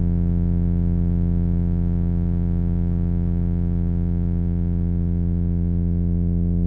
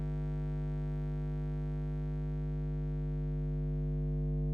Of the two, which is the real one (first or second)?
second